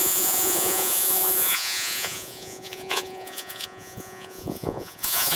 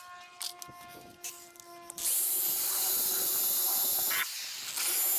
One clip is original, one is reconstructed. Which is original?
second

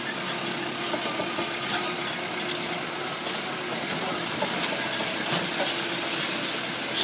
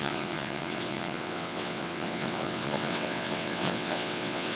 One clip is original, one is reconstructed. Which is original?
first